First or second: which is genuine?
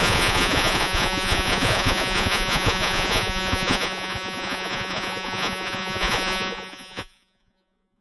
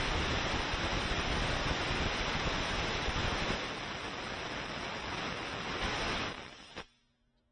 second